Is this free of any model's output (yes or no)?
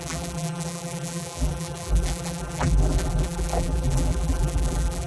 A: no